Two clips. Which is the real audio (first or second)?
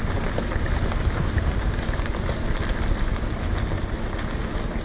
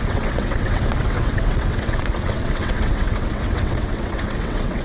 first